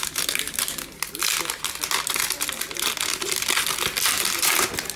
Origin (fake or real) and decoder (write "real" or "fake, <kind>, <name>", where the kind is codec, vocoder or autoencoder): real